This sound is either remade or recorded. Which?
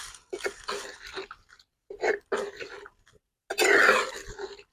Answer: recorded